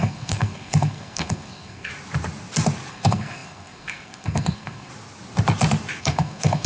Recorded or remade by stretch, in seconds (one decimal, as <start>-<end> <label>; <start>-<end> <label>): 0.0-1.9 remade; 1.9-2.9 recorded; 2.9-4.9 remade; 4.9-6.0 recorded; 6.0-6.7 remade